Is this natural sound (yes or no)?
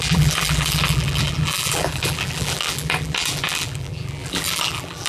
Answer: no